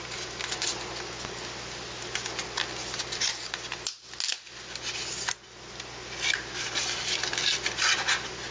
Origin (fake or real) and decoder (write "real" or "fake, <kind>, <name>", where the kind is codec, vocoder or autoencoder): real